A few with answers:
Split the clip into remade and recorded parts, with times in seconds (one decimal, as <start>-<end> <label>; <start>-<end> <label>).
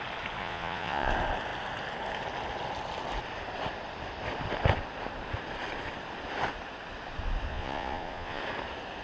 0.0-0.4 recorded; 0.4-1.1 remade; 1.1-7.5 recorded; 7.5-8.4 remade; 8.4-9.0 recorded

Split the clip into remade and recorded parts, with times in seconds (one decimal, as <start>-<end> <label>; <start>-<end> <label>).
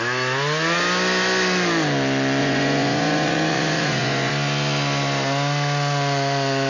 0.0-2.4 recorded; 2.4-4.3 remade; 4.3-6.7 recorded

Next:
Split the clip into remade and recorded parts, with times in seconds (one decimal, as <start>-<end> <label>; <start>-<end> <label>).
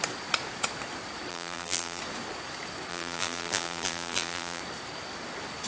0.0-1.3 recorded; 1.3-2.0 remade; 2.0-2.9 recorded; 2.9-4.6 remade; 4.6-5.7 recorded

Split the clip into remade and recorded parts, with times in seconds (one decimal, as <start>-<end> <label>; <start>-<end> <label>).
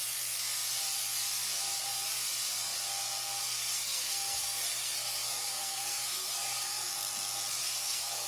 0.0-3.4 recorded; 3.4-6.9 remade; 6.9-7.6 recorded; 7.6-8.3 remade